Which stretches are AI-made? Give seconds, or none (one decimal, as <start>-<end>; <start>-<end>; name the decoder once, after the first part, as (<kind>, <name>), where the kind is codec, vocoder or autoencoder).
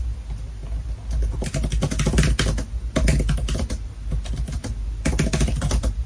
none